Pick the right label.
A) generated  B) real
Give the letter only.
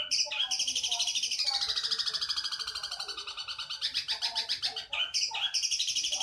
B